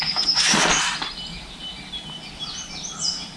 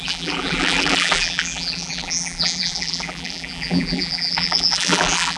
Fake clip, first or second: second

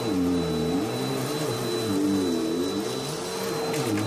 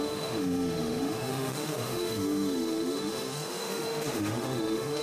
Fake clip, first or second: second